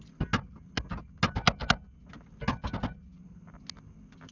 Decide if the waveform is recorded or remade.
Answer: recorded